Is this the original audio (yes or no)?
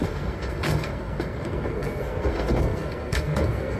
no